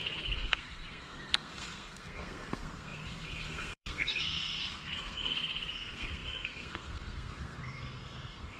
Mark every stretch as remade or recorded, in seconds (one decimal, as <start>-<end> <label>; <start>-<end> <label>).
0.0-8.6 remade